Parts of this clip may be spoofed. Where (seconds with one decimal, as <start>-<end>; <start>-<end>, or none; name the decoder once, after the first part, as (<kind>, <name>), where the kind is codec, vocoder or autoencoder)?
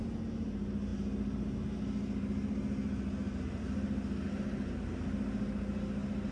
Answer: none